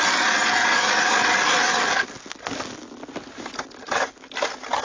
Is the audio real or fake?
real